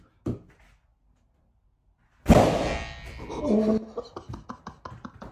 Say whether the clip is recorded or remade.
recorded